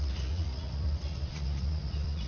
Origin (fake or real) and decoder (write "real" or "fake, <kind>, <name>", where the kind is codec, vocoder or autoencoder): fake, vocoder, Vocos